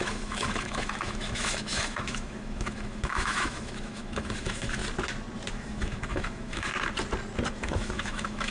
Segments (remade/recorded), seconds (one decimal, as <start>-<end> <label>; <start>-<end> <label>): 0.0-4.8 remade; 4.8-5.5 recorded; 5.5-6.7 remade; 6.7-7.5 recorded; 7.5-8.5 remade

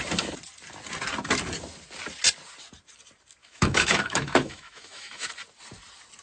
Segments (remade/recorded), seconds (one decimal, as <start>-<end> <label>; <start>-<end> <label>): 0.0-3.4 recorded; 3.4-5.3 remade; 5.3-6.2 recorded

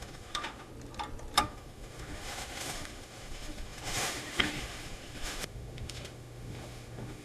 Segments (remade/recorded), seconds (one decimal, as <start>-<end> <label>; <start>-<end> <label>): 0.0-0.7 remade; 0.7-1.4 recorded; 1.4-7.2 remade